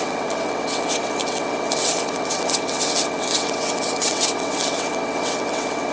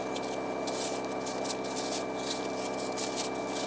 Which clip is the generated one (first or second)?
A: first